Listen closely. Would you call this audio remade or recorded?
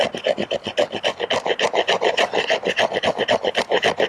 recorded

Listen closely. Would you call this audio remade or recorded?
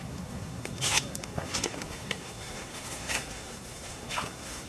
remade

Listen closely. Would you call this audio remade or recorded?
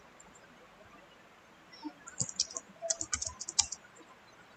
recorded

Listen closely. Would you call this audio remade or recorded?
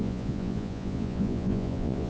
remade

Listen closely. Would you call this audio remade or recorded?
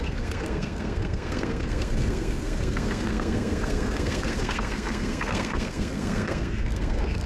remade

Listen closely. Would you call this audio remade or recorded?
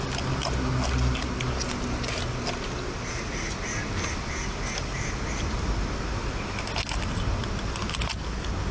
recorded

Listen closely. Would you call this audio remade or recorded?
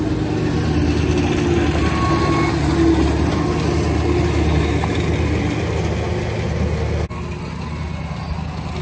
recorded